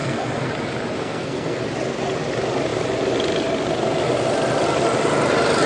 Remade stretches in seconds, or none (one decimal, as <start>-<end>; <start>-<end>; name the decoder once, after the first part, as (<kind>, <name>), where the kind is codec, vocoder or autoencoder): 0.0-0.5 (codec, SNAC); 1.0-1.6